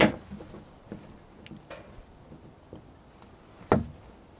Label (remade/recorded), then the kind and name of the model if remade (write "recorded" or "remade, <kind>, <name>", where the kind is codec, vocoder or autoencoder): recorded